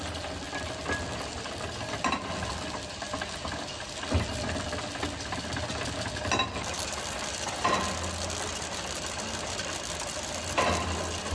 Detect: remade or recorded recorded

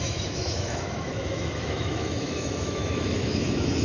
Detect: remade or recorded remade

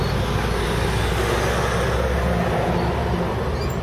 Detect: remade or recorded recorded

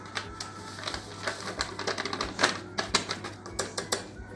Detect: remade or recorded recorded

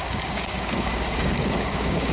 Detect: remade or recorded remade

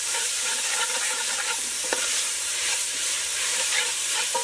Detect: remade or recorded remade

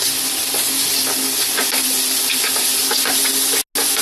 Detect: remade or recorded recorded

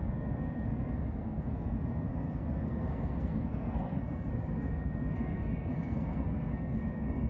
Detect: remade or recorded remade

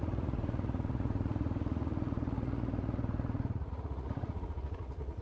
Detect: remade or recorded remade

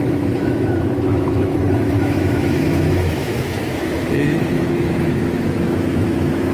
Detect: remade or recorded remade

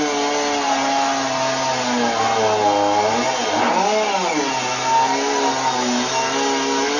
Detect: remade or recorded recorded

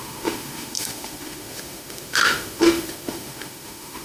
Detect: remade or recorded remade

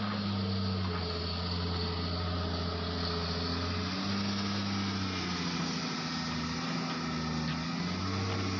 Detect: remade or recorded recorded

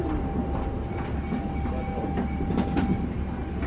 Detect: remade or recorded recorded